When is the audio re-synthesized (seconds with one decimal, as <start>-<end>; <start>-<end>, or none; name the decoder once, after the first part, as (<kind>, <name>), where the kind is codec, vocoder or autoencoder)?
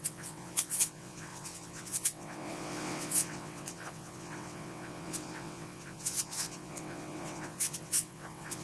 0.0-8.6 (vocoder, WaveNeXt)